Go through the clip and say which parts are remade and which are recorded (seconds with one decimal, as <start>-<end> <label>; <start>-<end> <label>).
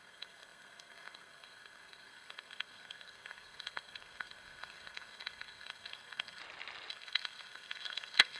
0.0-6.4 remade; 6.4-6.9 recorded; 6.9-8.4 remade